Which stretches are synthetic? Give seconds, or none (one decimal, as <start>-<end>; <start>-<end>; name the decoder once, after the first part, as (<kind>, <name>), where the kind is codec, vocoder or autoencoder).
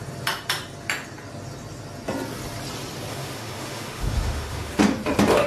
3.1-4.7 (autoencoder, DAC-VAE)